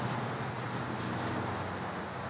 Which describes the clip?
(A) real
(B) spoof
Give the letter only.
A